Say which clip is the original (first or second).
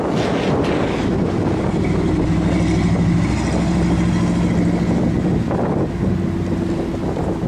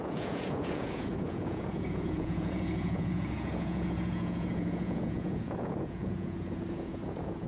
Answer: first